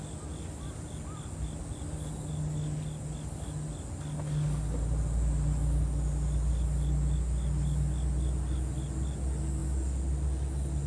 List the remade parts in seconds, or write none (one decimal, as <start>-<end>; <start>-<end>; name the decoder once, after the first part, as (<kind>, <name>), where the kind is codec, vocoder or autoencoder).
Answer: none